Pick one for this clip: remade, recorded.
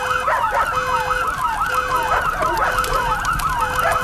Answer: recorded